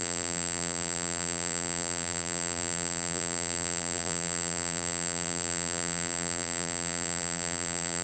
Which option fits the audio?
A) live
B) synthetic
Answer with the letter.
B